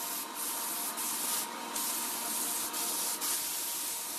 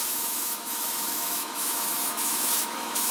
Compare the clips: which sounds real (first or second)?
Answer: first